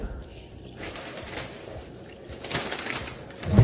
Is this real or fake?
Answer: real